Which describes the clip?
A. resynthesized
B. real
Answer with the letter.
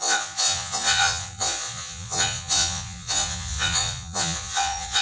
A